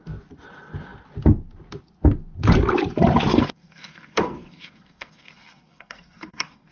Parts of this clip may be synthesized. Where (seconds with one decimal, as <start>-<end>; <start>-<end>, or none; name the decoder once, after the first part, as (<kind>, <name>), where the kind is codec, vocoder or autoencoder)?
3.3-6.7 (codec, SNAC)